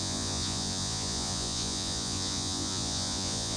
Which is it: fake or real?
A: fake